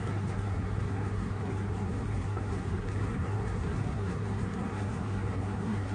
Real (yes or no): no